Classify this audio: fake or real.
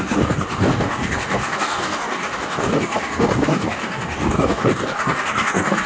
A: fake